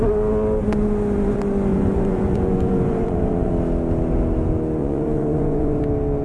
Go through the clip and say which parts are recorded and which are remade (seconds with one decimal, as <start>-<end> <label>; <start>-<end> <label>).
0.0-1.7 recorded; 1.7-3.5 remade; 3.5-4.8 recorded; 4.8-5.8 remade; 5.8-6.2 recorded